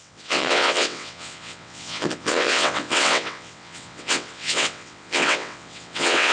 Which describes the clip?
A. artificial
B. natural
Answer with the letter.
A